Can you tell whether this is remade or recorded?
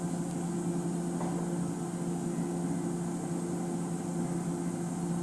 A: recorded